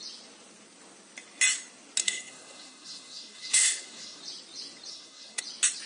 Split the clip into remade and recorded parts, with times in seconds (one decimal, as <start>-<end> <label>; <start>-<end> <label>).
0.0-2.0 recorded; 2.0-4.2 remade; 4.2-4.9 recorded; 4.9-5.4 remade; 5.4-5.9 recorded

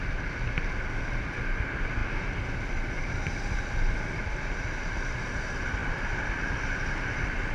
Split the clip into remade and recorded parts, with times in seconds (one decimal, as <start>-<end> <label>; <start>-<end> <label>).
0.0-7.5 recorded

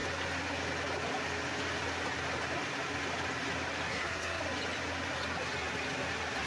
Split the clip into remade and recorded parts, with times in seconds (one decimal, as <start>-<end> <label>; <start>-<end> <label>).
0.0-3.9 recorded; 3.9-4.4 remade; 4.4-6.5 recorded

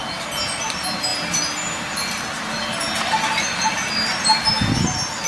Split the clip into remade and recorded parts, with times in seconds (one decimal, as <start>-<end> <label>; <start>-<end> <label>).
0.0-1.1 recorded; 1.1-4.3 remade; 4.3-5.3 recorded